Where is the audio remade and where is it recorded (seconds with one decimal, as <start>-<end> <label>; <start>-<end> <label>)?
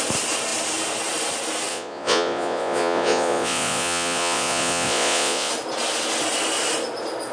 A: 0.0-1.7 recorded; 1.7-5.5 remade; 5.5-7.3 recorded